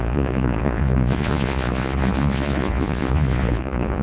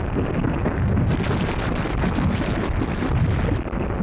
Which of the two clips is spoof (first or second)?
first